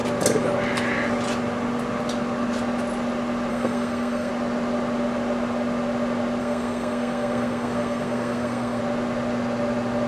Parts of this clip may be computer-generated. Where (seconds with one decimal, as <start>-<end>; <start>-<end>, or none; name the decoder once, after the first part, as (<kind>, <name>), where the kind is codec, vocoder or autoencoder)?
3.5-4.3 (codec, SNAC); 6.4-8.8